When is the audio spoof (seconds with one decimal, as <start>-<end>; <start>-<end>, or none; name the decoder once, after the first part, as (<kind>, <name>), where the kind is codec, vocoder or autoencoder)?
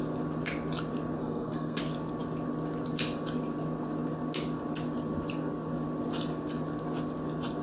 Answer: 1.2-1.8 (codec, SNAC)